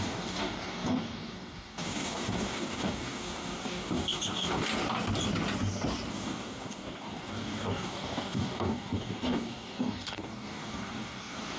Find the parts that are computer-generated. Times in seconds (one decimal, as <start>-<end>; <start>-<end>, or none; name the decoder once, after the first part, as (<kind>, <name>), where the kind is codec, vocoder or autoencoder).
0.0-4.7 (codec, DAC); 6.1-11.6